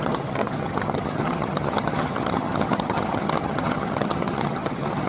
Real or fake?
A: fake